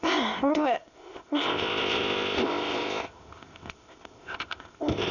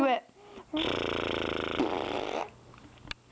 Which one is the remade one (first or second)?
first